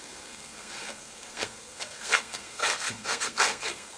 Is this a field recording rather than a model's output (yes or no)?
no